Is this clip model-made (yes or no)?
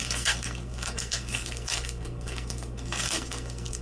yes